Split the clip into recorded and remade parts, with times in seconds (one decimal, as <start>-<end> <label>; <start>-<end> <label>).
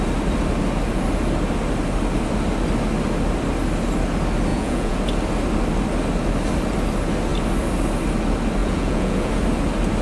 0.0-4.5 recorded; 4.5-5.0 remade; 5.0-8.6 recorded; 8.6-9.3 remade; 9.3-10.0 recorded